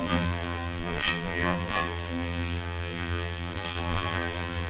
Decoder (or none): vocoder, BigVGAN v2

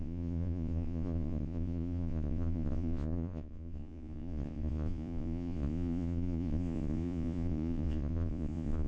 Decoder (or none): vocoder, Vocos